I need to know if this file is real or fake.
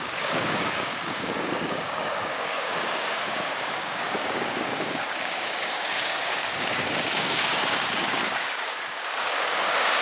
fake